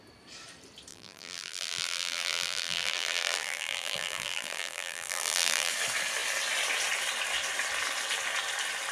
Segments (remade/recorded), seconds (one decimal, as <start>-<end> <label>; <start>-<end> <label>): 0.0-0.9 recorded; 0.9-5.7 remade; 5.7-8.9 recorded